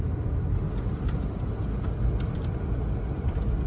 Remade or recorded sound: recorded